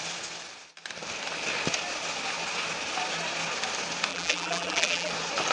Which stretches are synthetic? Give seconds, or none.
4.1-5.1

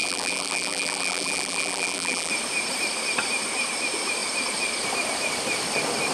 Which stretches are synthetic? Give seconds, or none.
0.0-2.3

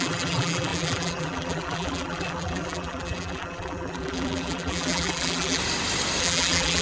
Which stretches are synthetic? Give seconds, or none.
0.0-5.6; 6.2-6.8

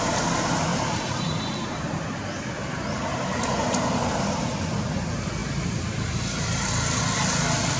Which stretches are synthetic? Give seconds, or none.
0.7-2.0; 3.1-3.9

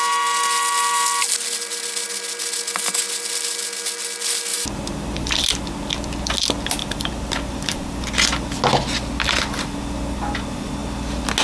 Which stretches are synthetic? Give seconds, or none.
4.5-5.4; 6.8-8.0

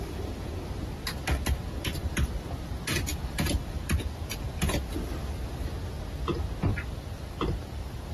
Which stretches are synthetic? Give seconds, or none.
2.0-2.5; 3.1-3.7; 6.7-8.1